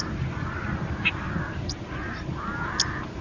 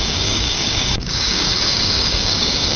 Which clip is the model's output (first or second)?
second